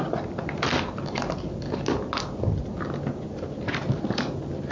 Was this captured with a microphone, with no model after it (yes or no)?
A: yes